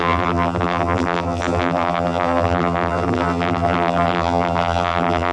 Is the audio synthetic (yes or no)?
yes